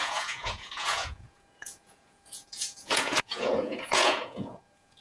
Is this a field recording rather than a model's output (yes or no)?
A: no